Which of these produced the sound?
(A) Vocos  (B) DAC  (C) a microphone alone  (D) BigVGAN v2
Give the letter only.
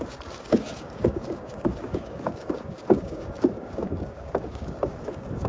B